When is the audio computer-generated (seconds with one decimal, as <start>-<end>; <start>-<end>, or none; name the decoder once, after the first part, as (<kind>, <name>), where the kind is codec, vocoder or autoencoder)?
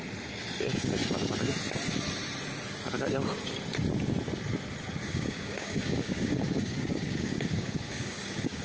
5.0-8.6 (codec, DAC)